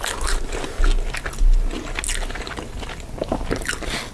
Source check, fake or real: real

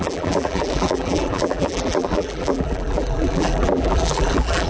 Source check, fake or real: fake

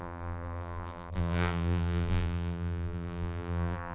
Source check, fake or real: fake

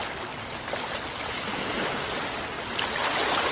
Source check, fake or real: real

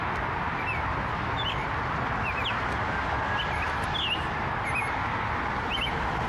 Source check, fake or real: real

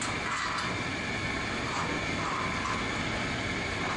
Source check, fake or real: real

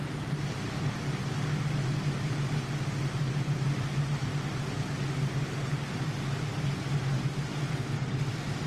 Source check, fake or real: real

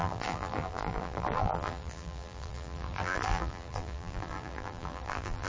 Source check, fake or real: fake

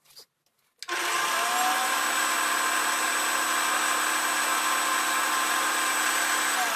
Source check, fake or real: real